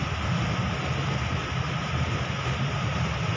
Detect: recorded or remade recorded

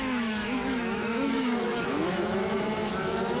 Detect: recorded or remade remade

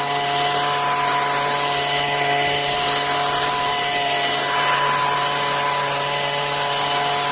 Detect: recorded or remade recorded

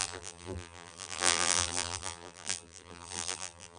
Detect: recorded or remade remade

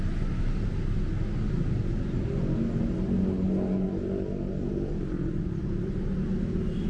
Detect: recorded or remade recorded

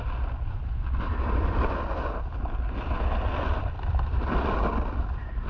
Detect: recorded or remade recorded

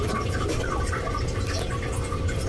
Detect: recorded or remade recorded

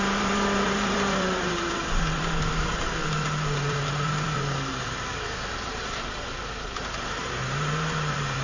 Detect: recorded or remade remade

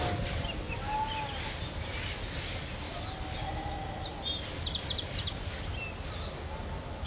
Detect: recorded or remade recorded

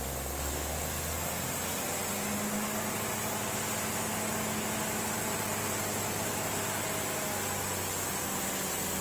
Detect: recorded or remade recorded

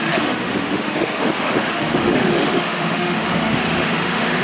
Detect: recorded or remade remade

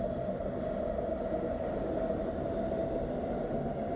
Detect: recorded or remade recorded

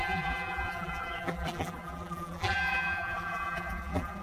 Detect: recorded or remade remade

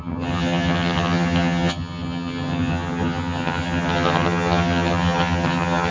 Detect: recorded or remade remade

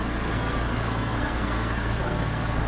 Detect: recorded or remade remade